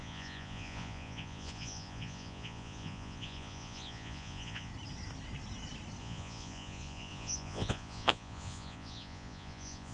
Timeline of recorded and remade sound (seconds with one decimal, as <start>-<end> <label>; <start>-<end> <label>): 0.0-4.7 remade; 4.7-6.0 recorded; 6.0-9.9 remade